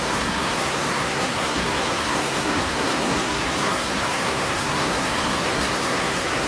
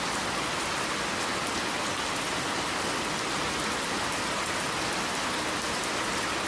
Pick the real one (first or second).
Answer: second